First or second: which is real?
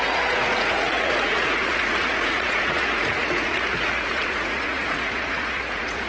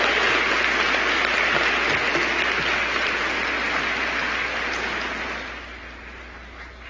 second